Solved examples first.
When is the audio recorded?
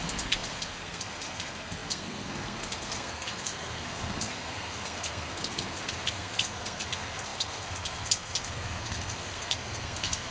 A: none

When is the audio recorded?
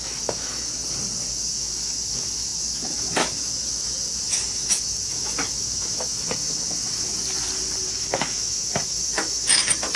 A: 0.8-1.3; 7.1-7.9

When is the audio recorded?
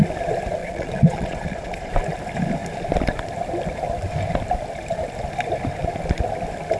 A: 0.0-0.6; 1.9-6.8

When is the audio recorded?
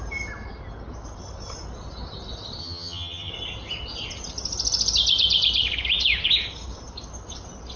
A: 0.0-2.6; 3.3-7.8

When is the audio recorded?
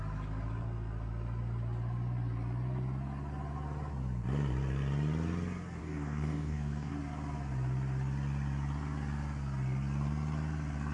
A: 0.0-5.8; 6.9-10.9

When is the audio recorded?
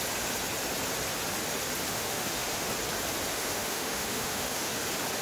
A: 0.0-1.9; 2.7-3.3; 4.8-5.2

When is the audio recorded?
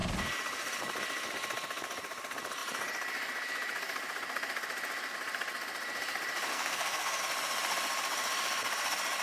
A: 0.0-6.5; 7.2-9.2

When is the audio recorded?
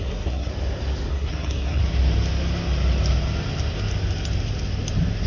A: 0.5-1.1; 1.8-5.3